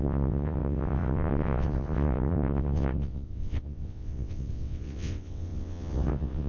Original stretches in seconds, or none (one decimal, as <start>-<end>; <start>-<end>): none